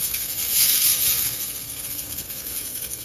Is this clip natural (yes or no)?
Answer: no